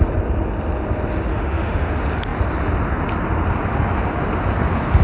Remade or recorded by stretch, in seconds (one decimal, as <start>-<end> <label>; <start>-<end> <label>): 0.0-1.3 recorded; 1.3-1.9 remade; 1.9-5.0 recorded